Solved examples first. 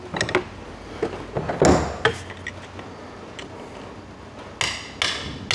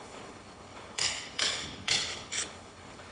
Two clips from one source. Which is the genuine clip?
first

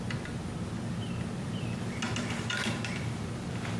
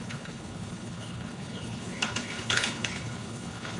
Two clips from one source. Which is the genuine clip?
first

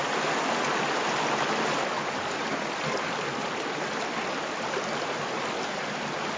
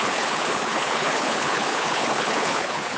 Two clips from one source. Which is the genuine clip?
first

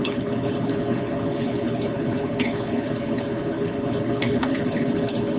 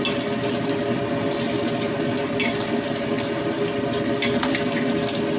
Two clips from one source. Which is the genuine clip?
second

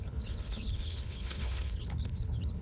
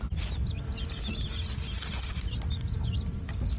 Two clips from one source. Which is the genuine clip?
second